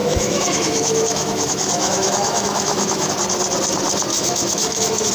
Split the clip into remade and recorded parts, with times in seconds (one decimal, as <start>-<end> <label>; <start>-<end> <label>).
0.0-3.1 remade; 3.1-4.1 recorded; 4.1-5.1 remade